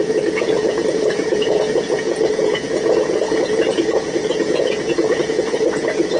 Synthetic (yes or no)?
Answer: yes